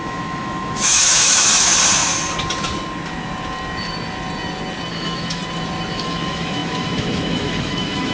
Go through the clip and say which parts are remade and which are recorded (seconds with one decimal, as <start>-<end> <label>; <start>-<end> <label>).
0.0-1.7 remade; 1.7-4.9 recorded; 4.9-5.4 remade; 5.4-5.9 recorded; 5.9-8.1 remade